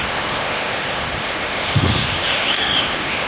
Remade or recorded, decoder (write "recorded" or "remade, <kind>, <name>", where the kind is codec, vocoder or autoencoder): remade, autoencoder, DAC-VAE